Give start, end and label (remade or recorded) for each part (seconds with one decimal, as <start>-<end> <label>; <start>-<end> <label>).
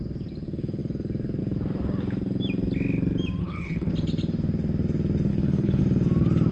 0.0-3.4 recorded; 3.4-3.9 remade; 3.9-5.3 recorded; 5.3-5.8 remade; 5.8-6.5 recorded